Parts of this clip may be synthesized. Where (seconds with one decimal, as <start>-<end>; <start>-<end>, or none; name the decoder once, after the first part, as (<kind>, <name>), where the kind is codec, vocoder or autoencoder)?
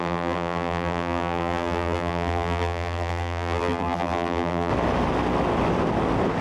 0.0-4.7 (vocoder, BigVGAN v2)